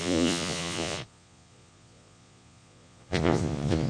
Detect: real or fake fake